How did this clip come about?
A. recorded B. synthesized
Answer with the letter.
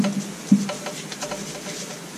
A